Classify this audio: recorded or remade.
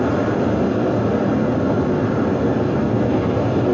recorded